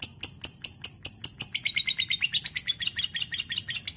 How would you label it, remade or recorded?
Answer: recorded